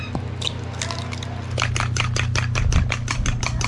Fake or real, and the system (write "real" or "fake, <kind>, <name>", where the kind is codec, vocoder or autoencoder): real